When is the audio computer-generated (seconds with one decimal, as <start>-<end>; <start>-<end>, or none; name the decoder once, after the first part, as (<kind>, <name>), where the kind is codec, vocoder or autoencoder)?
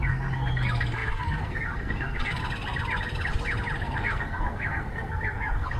0.0-2.4 (codec, SNAC); 3.8-5.8